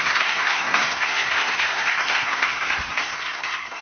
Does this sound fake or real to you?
fake